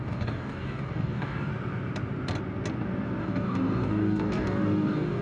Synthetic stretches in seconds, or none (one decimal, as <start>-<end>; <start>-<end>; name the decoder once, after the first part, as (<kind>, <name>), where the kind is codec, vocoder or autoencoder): 0.0-1.5 (codec, DAC); 3.2-5.2